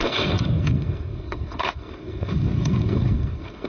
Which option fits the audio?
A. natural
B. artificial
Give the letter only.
B